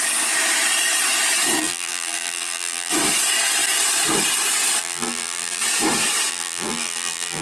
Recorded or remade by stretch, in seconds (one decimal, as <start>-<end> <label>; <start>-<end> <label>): 0.0-1.6 recorded; 1.6-2.9 remade; 2.9-4.8 recorded; 4.8-5.6 remade; 5.6-6.3 recorded; 6.3-7.4 remade